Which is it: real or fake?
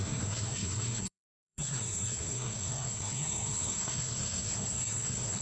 fake